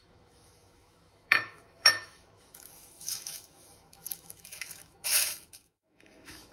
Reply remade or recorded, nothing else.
remade